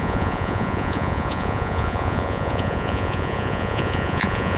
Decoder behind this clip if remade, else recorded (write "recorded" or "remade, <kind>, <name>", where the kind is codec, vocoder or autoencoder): remade, vocoder, Vocos